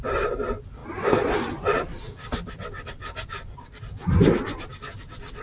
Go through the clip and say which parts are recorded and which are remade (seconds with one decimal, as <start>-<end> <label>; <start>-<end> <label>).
0.0-5.4 recorded